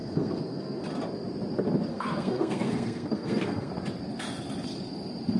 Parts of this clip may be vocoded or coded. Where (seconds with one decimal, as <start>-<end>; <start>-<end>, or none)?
0.0-0.8; 1.9-3.7